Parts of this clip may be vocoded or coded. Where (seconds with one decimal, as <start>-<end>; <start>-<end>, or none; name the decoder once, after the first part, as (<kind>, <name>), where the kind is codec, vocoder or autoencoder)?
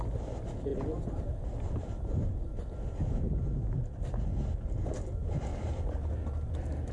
none